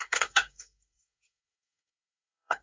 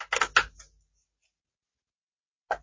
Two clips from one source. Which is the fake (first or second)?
first